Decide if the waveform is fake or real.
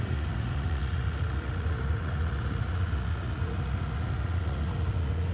fake